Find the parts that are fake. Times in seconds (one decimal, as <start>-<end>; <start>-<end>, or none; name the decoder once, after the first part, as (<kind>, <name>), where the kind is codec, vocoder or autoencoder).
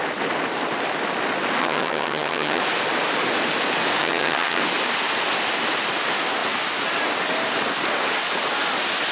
1.6-2.6 (vocoder, HiFi-GAN); 4.0-4.6